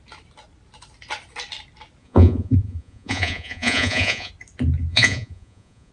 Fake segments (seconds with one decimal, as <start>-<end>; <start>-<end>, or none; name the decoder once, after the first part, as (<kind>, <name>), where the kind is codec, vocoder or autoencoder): 2.0-4.3 (vocoder, Vocos); 4.9-5.9